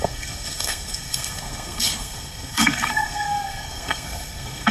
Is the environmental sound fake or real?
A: fake